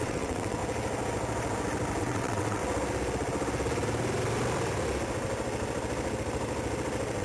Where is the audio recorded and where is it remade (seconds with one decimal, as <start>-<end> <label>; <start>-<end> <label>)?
0.0-0.6 remade; 0.6-2.0 recorded; 2.0-2.6 remade; 2.6-7.2 recorded